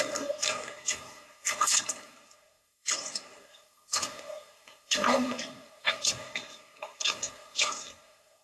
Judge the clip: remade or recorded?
remade